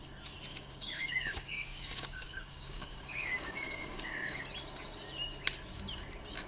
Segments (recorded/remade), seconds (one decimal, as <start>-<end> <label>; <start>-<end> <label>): 0.0-0.5 recorded; 0.5-4.4 remade; 4.4-6.5 recorded